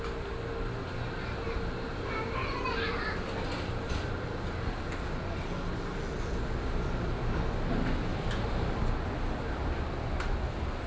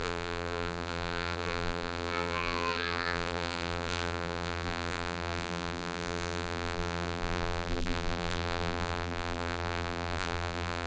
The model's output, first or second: second